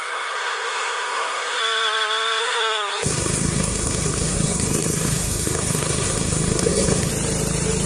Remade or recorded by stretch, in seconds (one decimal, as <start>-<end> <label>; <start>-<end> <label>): 0.0-1.6 remade; 1.6-2.4 recorded; 2.4-7.1 remade; 7.1-7.9 recorded

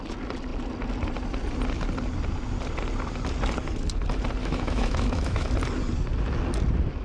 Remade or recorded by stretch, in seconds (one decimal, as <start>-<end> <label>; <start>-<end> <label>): 0.0-4.4 recorded; 4.4-5.5 remade; 5.5-7.0 recorded

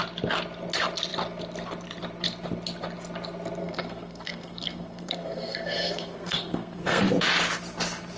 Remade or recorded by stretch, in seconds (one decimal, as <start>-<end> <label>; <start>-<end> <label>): 0.0-3.6 recorded; 3.6-7.0 remade; 7.0-8.2 recorded

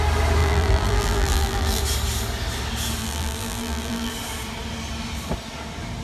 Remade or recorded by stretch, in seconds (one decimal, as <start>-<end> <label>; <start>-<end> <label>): 0.0-0.4 recorded; 0.4-1.8 remade; 1.8-3.0 recorded; 3.0-4.1 remade; 4.1-6.0 recorded

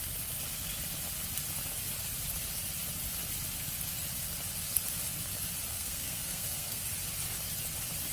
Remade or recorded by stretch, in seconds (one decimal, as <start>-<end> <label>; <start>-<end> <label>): 0.0-5.7 recorded; 5.7-6.8 remade; 6.8-8.1 recorded

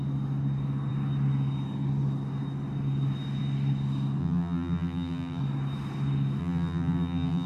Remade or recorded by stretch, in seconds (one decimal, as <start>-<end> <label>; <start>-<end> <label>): 0.0-4.2 recorded; 4.2-5.4 remade; 5.4-6.4 recorded; 6.4-7.5 remade